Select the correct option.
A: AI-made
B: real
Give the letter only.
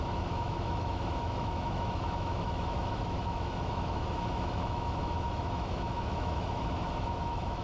A